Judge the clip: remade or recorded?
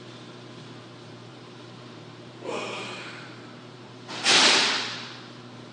remade